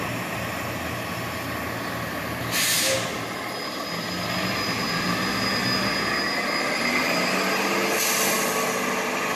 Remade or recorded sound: recorded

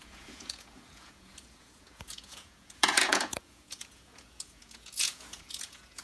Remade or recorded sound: remade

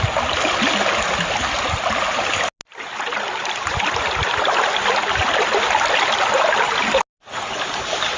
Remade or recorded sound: recorded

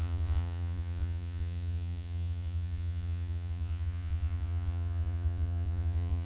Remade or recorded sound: remade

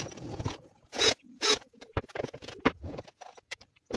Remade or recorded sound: remade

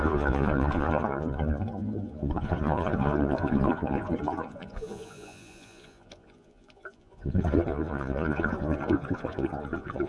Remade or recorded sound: remade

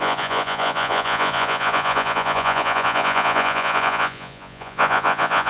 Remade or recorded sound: remade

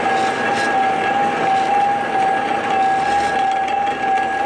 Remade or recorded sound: recorded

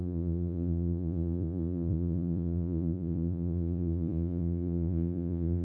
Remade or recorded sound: remade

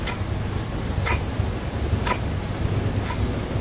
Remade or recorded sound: recorded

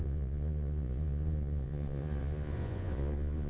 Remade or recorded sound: remade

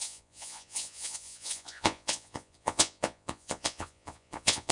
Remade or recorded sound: remade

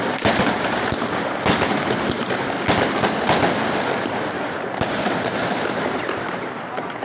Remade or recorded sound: recorded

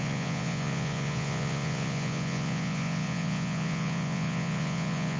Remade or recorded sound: remade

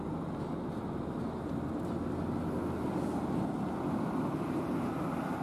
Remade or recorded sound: recorded